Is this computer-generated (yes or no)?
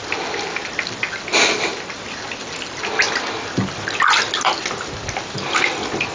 no